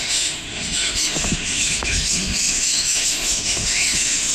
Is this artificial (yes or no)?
yes